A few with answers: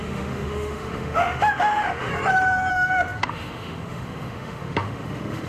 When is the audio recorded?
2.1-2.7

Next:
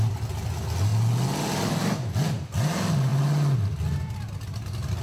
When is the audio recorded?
0.0-5.0